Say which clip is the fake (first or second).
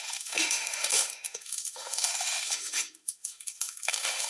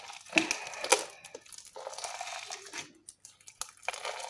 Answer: first